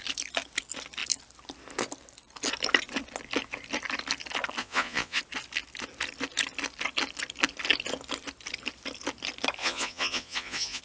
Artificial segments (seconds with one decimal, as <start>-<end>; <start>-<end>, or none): 4.6-5.2; 9.6-10.8